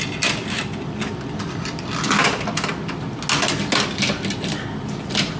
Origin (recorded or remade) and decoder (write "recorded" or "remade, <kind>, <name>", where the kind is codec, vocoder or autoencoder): recorded